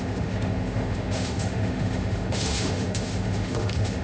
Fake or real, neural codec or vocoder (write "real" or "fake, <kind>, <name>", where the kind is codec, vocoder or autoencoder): fake, autoencoder, DAC-VAE